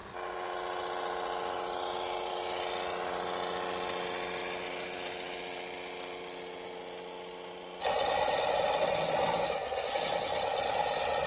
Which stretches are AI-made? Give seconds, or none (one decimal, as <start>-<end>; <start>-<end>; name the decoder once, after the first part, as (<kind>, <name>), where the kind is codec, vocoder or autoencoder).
none